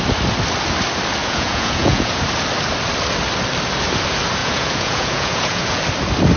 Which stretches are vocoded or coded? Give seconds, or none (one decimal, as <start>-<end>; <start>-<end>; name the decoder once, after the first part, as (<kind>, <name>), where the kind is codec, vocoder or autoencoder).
1.2-2.2 (vocoder, Vocos); 4.4-5.8